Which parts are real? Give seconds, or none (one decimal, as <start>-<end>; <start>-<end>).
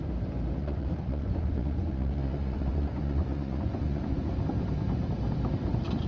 0.0-0.6; 4.3-6.1